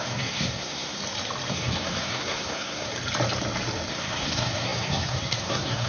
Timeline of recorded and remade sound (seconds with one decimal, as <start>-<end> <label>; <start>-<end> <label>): 0.0-1.0 remade; 1.0-1.5 recorded; 1.5-2.9 remade; 2.9-3.9 recorded; 3.9-5.9 remade